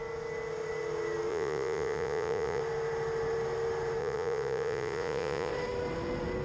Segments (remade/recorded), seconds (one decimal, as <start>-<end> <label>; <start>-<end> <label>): 0.0-1.3 recorded; 1.3-2.6 remade; 2.6-4.0 recorded; 4.0-5.5 remade; 5.5-6.4 recorded